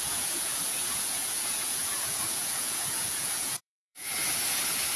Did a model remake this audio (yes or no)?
yes